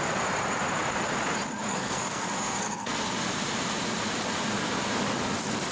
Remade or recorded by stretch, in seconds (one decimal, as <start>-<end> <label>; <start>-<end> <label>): 0.0-1.7 recorded; 1.7-3.0 remade; 3.0-5.7 recorded